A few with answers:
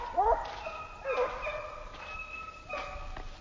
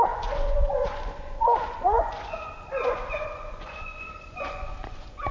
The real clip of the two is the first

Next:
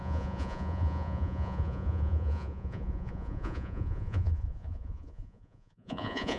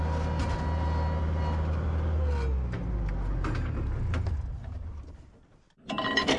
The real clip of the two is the second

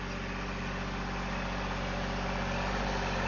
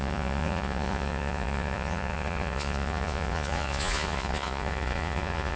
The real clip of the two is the first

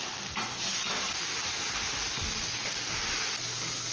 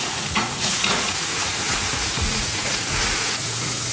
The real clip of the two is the first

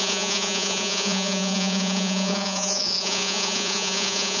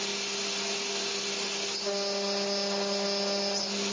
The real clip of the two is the second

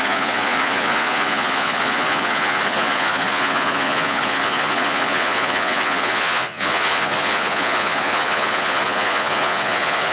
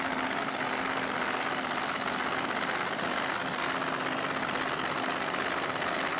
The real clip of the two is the second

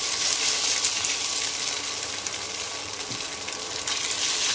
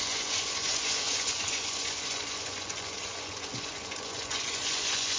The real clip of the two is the first